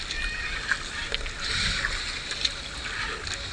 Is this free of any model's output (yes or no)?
yes